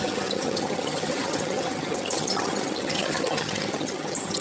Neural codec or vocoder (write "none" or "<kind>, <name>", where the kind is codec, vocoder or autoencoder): vocoder, HiFi-GAN